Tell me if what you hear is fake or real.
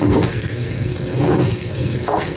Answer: fake